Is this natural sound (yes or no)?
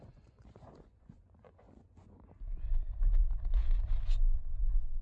no